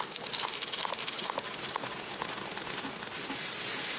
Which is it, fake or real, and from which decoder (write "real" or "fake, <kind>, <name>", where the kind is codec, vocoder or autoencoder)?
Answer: real